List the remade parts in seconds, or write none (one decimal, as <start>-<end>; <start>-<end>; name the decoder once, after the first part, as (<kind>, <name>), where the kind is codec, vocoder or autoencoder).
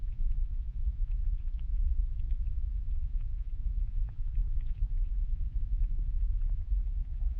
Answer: 0.0-7.4 (vocoder, Vocos)